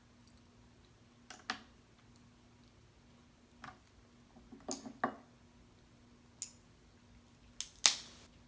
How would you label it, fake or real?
real